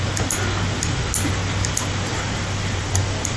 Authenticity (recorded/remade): recorded